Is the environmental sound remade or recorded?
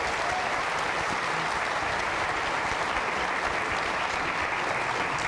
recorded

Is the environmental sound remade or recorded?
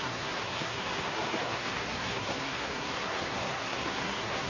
remade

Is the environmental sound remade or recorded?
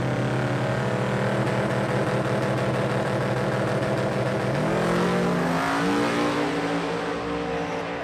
recorded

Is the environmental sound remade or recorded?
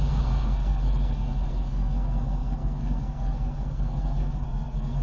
remade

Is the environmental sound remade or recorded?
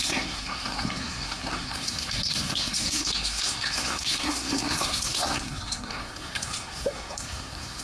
remade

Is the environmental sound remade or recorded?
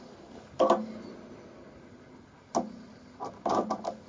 recorded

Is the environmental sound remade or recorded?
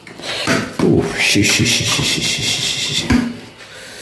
recorded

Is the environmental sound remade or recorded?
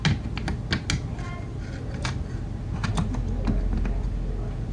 recorded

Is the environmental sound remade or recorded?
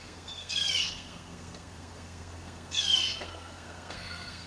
remade